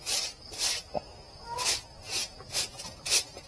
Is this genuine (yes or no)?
yes